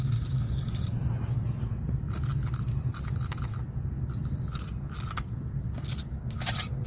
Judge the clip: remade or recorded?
recorded